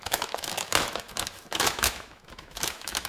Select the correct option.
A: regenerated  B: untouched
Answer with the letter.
A